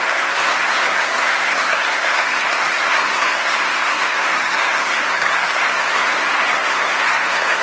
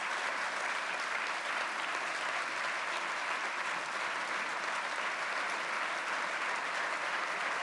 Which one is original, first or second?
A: second